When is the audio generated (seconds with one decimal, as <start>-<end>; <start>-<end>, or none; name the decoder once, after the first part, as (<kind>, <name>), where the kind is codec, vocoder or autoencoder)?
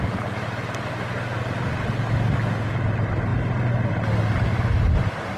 none